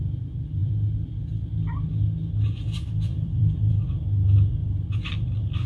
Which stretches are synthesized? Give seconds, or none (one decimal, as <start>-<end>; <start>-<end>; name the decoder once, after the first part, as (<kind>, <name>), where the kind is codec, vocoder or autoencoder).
0.6-3.7 (vocoder, BigVGAN v2); 4.6-5.7